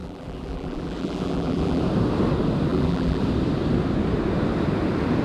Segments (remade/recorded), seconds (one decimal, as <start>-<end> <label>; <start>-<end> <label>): 0.0-1.8 remade; 1.8-2.7 recorded; 2.7-3.2 remade; 3.2-5.2 recorded